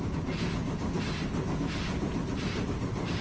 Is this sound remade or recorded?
recorded